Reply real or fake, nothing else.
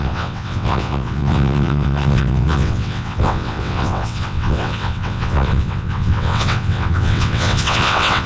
fake